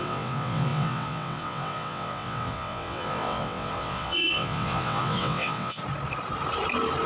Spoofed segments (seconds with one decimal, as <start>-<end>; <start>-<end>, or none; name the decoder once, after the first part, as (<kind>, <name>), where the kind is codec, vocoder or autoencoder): 0.0-5.8 (vocoder, WaveNeXt)